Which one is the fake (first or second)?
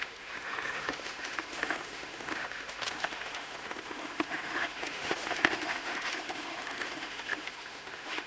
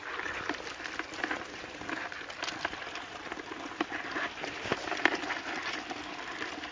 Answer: first